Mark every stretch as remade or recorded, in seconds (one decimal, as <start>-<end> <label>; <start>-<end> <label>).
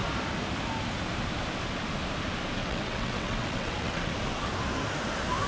0.0-2.6 recorded; 2.6-4.1 remade; 4.1-5.5 recorded